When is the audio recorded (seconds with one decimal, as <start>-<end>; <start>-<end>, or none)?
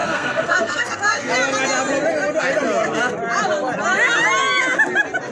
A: 1.3-5.3